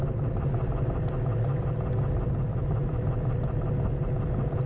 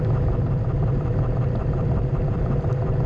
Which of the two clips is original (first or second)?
first